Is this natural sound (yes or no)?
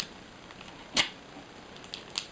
yes